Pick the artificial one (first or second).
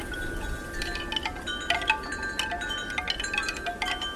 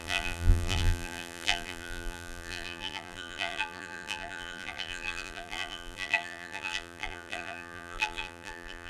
second